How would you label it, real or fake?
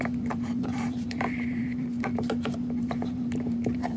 fake